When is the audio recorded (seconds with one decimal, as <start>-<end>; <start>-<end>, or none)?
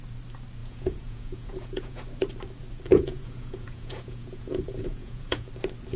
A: 0.0-0.6; 2.0-2.9; 5.5-6.0